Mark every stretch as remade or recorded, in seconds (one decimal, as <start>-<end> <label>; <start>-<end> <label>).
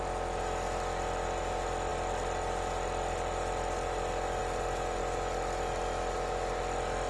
0.0-7.1 recorded